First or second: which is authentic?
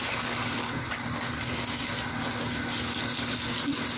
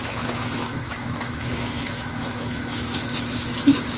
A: first